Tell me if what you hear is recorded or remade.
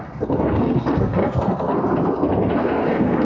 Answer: remade